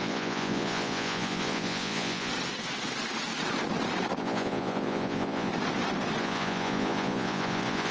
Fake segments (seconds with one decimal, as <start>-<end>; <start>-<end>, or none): 0.0-2.3; 4.2-5.5; 6.2-7.9